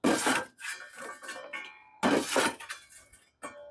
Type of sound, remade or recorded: recorded